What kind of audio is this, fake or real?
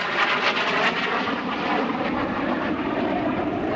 fake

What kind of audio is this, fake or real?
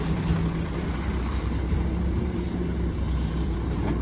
fake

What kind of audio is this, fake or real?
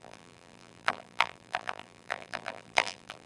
fake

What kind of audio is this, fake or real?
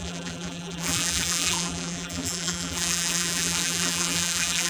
fake